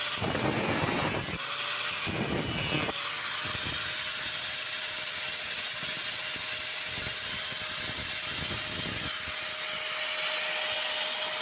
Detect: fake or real real